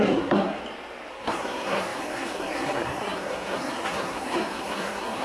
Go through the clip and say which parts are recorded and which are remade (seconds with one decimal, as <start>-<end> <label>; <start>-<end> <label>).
0.0-0.6 remade; 0.6-1.1 recorded; 1.1-5.2 remade

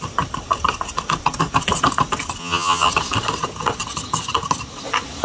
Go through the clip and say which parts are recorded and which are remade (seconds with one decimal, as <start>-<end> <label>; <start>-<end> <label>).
0.0-2.4 recorded; 2.4-2.9 remade; 2.9-5.2 recorded

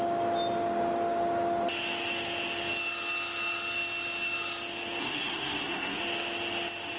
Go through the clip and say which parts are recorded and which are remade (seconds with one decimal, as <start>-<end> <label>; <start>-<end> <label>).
0.0-5.0 recorded; 5.0-6.0 remade; 6.0-7.0 recorded

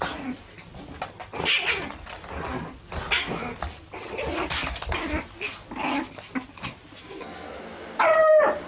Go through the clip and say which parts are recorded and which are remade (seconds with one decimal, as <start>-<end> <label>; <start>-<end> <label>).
0.0-7.0 recorded; 7.0-7.6 remade; 7.6-8.7 recorded

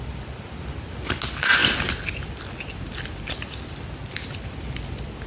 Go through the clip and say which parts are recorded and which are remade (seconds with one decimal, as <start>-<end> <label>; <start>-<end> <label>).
0.0-5.3 recorded